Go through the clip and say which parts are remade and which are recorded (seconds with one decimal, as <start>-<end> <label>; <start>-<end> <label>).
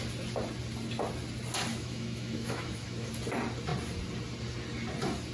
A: 0.0-1.7 recorded; 1.7-3.1 remade; 3.1-5.3 recorded